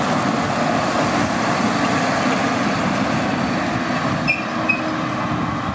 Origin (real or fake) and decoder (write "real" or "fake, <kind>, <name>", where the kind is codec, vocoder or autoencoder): real